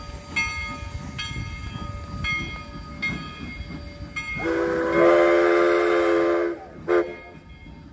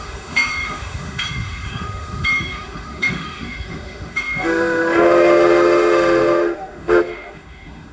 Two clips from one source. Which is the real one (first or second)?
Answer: first